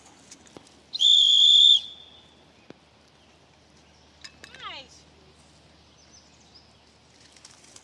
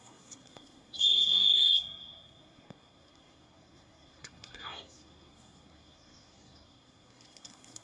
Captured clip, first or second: first